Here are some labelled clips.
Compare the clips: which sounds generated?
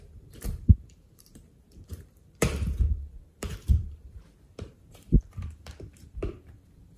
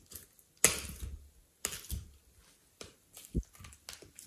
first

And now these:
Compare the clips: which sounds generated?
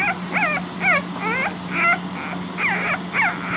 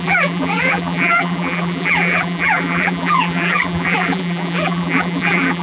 second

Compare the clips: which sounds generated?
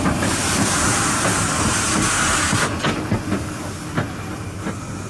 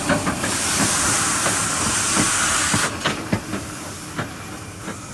second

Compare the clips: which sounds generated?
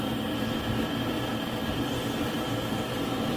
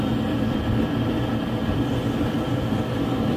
second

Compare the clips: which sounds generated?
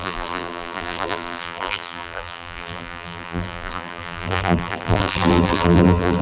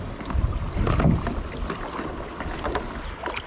first